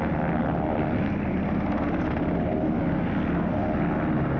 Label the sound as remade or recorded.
recorded